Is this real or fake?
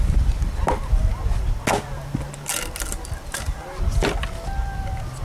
real